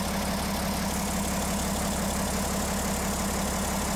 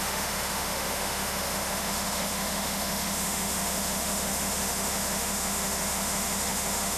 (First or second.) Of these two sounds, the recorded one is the first